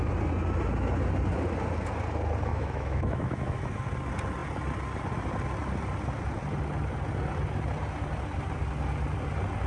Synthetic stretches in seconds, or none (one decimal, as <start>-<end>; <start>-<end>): 2.5-3.6